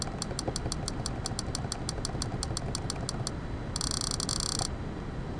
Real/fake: real